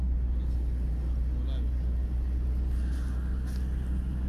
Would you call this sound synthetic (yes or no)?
no